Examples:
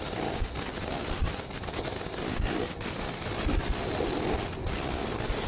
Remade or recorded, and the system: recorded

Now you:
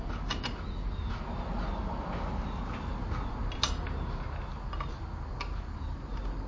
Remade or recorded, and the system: recorded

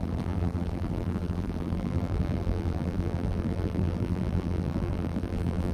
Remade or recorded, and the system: remade, vocoder, BigVGAN v2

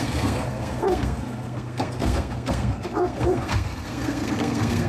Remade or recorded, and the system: remade, codec, SNAC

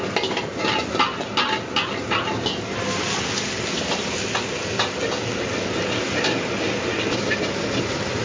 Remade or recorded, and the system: recorded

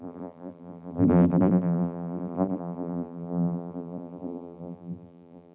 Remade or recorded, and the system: remade, vocoder, BigVGAN v2